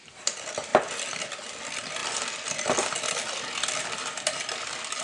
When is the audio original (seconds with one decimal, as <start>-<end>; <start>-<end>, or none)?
none